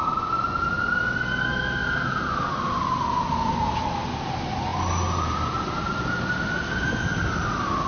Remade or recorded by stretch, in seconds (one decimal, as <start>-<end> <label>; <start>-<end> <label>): 0.0-1.8 recorded; 1.8-2.5 remade; 2.5-4.7 recorded; 4.7-6.8 remade; 6.8-7.9 recorded